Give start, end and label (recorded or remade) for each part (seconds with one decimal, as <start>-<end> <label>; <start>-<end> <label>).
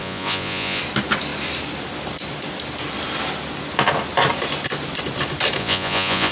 0.0-0.8 remade; 0.8-5.6 recorded; 5.6-6.3 remade